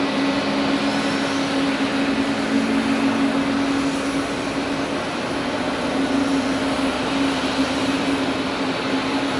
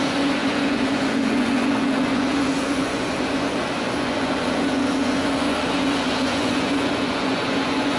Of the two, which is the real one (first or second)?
first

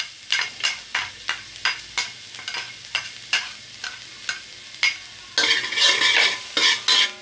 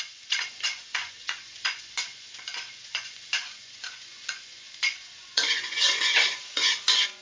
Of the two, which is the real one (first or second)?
first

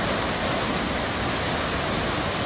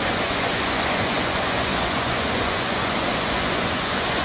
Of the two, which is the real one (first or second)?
first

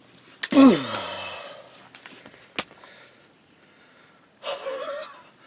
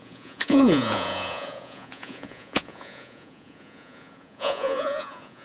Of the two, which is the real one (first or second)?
first